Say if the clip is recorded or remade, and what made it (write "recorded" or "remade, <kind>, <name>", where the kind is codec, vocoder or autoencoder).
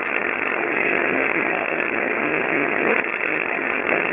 remade, vocoder, HiFi-GAN